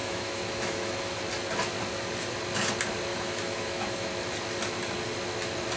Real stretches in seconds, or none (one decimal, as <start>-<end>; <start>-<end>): 1.2-3.1; 4.1-5.8